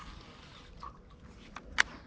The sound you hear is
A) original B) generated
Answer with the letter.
A